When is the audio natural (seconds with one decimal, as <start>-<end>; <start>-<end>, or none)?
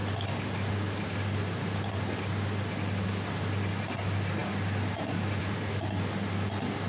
0.0-6.9